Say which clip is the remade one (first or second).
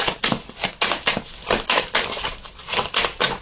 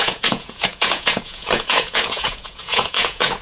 second